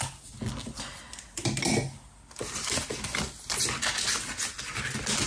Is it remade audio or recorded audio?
recorded